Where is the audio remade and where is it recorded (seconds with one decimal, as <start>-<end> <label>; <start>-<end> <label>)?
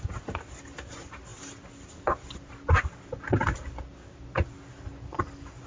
0.0-5.7 recorded